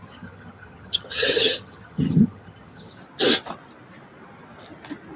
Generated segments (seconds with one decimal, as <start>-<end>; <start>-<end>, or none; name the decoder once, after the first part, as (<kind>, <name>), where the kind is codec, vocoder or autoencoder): 0.0-3.0 (vocoder, HiFi-GAN)